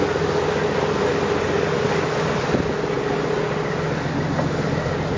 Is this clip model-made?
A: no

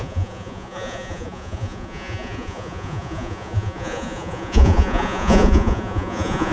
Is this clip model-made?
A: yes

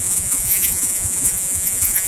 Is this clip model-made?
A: yes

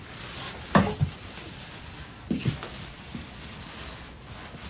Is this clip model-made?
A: no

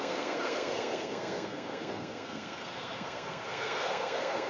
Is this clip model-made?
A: yes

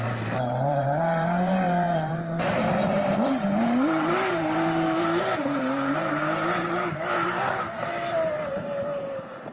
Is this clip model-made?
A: yes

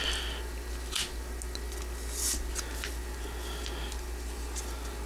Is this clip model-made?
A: no